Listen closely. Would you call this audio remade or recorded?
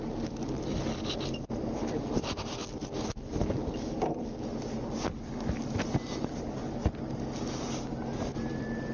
recorded